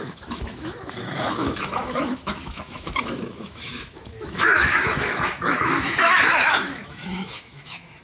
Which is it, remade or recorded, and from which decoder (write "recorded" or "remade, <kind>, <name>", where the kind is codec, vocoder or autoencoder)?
remade, autoencoder, DAC-VAE